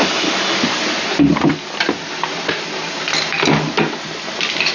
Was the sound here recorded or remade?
recorded